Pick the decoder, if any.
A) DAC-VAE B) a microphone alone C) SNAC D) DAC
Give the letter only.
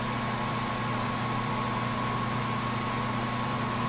B